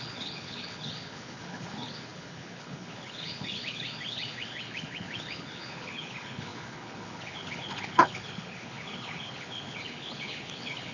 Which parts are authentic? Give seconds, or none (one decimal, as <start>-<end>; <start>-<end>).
none